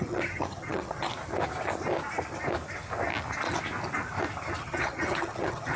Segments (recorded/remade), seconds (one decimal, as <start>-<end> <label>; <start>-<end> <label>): 0.0-1.1 remade; 1.1-4.6 recorded; 4.6-5.8 remade